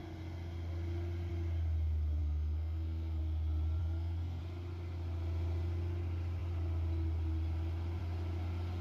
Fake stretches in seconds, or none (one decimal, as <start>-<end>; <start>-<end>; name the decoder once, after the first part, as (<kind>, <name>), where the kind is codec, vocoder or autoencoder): 2.2-3.2 (codec, SNAC); 3.8-4.4